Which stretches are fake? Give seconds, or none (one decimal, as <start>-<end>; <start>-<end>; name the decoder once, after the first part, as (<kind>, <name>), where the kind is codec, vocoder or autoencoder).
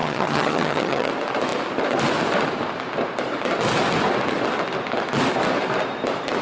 0.0-1.1 (vocoder, HiFi-GAN)